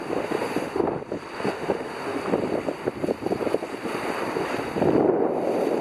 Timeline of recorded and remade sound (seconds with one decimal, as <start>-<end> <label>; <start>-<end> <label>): 0.0-1.0 remade; 1.0-1.5 recorded; 1.5-2.2 remade; 2.2-5.8 recorded